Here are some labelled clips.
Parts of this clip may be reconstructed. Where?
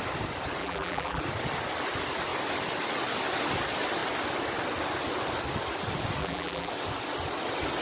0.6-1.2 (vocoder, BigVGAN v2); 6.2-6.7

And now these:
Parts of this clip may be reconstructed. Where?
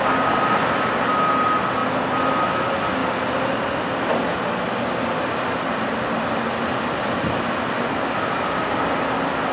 none